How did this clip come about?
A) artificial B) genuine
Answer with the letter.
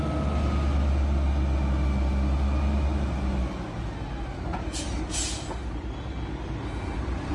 B